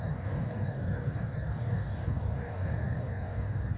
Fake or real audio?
fake